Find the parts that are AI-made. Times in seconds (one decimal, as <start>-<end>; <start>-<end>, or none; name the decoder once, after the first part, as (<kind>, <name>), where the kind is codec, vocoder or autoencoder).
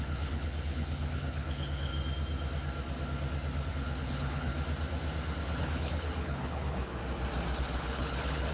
0.0-1.9 (codec, HILCodec); 3.7-4.5; 5.6-7.0; 7.6-8.5